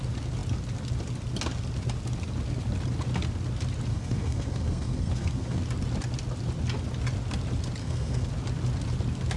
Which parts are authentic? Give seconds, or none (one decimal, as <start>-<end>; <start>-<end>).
0.0-3.9; 5.6-7.8; 8.3-9.4